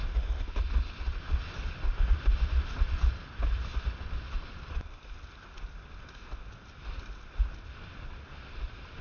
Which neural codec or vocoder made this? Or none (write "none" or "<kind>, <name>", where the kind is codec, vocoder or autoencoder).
none